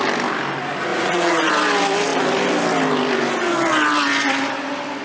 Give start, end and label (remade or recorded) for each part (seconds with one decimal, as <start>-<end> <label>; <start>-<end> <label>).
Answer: 0.0-0.9 recorded; 0.9-1.5 remade; 1.5-5.0 recorded

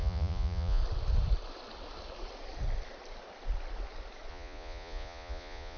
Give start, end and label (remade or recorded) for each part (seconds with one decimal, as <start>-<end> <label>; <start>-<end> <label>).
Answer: 0.0-0.8 remade; 0.8-4.3 recorded; 4.3-5.8 remade

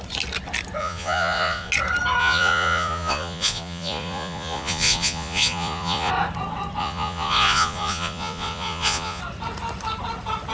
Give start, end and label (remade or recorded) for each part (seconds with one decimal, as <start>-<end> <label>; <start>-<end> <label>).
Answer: 0.0-0.8 recorded; 0.8-1.7 remade; 1.7-2.2 recorded; 2.2-6.1 remade; 6.1-6.8 recorded; 6.8-9.2 remade; 9.2-10.5 recorded

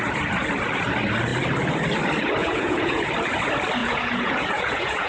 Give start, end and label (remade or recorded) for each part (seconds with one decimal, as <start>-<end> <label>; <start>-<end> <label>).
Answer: 0.0-2.4 recorded; 2.4-3.1 remade; 3.1-3.8 recorded; 3.8-5.1 remade

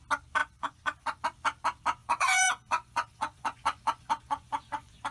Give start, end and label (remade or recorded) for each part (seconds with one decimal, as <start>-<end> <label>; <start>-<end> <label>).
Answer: 0.0-0.4 recorded; 0.4-1.2 remade; 1.2-2.0 recorded; 2.0-5.1 remade

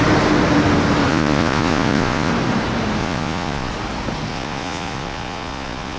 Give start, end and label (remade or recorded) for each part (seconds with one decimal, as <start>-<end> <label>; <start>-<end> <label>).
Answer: 0.0-1.1 recorded; 1.1-2.3 remade; 2.3-3.0 recorded; 3.0-3.7 remade; 3.7-4.3 recorded; 4.3-6.0 remade